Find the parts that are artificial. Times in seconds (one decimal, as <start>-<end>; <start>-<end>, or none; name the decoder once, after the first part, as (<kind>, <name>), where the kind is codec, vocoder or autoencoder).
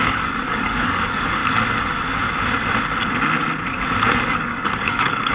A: 0.0-1.4 (codec, DAC); 4.3-5.3